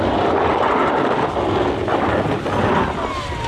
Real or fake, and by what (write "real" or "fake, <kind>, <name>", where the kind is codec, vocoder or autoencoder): real